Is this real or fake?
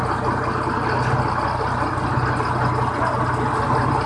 real